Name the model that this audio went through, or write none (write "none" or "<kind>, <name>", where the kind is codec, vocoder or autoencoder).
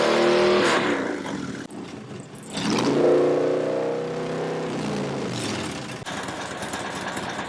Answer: none